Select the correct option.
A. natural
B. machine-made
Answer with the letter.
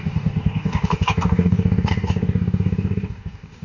B